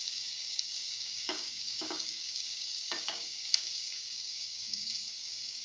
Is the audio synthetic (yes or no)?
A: yes